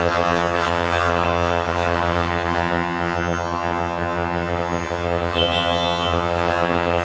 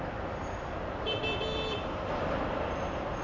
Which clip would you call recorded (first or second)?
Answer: second